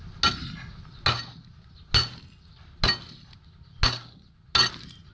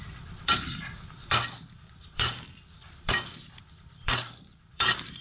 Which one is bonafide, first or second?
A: first